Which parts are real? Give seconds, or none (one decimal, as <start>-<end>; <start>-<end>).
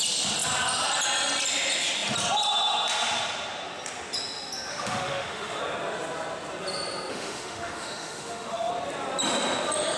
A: 0.0-4.7; 5.6-7.1; 8.7-10.0